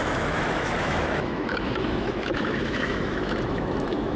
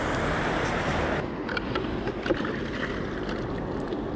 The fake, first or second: first